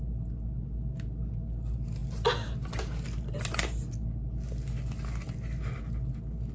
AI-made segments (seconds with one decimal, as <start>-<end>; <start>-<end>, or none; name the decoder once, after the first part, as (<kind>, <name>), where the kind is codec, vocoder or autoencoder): none